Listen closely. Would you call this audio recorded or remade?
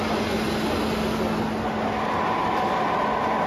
recorded